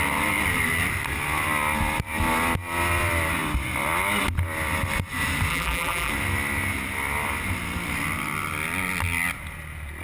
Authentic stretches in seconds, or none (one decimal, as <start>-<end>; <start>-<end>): 0.0-5.5; 6.1-10.0